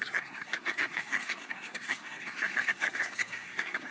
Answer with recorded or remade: remade